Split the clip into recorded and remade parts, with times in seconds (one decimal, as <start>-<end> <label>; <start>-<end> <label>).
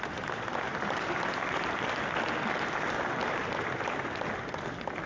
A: 0.0-0.7 recorded; 0.7-1.5 remade; 1.5-5.1 recorded